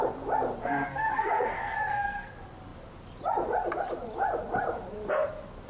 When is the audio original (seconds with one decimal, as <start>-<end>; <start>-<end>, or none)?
0.0-0.6; 2.3-5.7